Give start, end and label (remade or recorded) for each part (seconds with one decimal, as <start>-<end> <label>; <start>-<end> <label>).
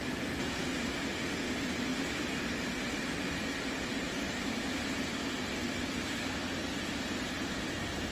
0.0-8.1 recorded